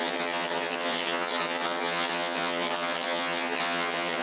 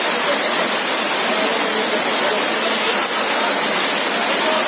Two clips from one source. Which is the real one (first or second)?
second